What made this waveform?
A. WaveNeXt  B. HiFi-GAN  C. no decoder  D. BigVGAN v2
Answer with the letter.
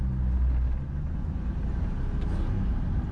C